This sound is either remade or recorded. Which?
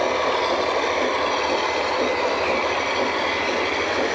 recorded